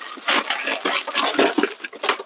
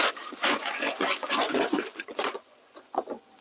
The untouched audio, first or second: first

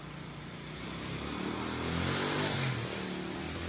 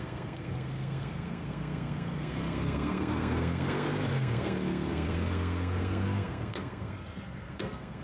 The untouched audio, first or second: first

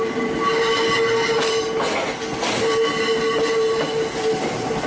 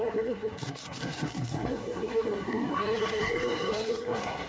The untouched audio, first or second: first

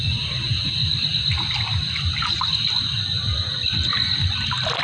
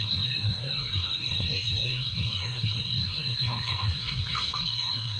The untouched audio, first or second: first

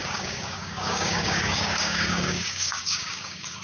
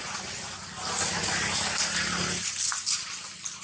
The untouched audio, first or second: second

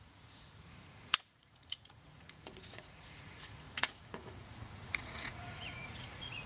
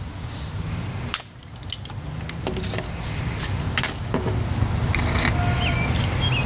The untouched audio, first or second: second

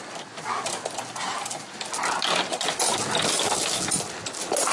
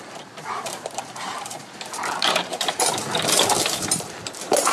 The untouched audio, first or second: first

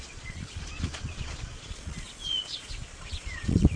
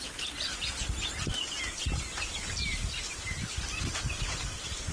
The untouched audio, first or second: second